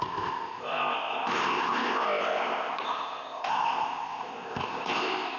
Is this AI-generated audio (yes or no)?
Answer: yes